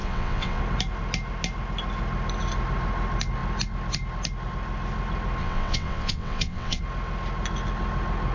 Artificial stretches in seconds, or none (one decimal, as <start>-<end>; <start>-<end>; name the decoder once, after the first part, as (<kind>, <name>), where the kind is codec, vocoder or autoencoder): 0.0-0.6 (vocoder, WaveNeXt); 5.4-6.8